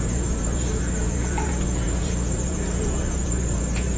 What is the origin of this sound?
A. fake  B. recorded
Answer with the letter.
A